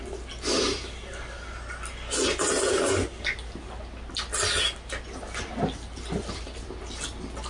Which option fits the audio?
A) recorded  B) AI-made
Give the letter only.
A